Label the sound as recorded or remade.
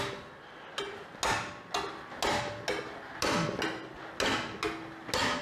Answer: recorded